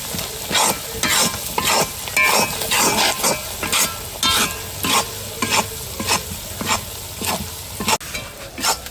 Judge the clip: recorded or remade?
recorded